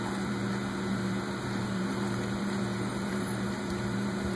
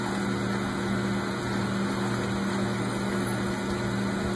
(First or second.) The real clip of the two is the second